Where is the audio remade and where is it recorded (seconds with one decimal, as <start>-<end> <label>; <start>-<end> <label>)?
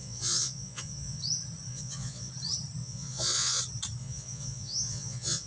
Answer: 0.0-1.2 remade; 1.2-1.7 recorded; 1.7-2.3 remade; 2.3-2.8 recorded; 2.8-3.6 remade; 3.6-4.0 recorded; 4.0-5.5 remade